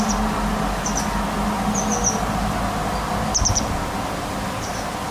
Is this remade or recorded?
recorded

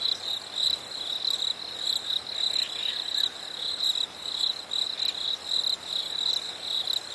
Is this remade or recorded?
recorded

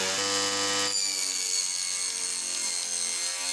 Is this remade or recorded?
recorded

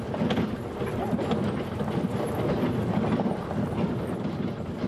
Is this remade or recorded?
recorded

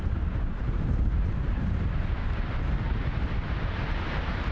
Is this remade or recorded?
remade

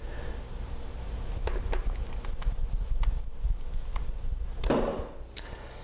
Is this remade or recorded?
recorded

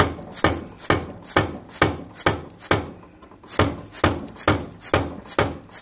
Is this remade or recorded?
recorded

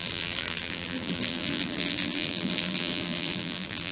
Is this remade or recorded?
remade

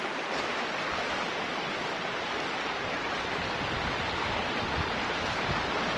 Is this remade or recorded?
recorded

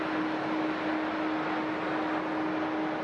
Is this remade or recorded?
recorded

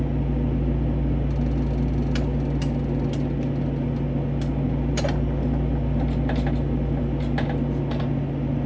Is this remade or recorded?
recorded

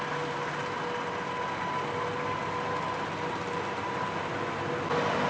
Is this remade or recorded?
recorded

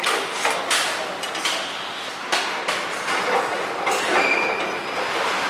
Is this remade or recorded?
recorded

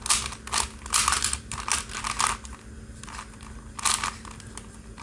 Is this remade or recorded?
recorded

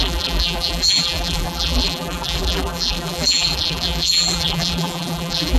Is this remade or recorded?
remade